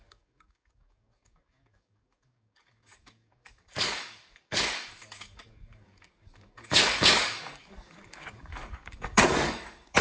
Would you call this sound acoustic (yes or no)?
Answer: no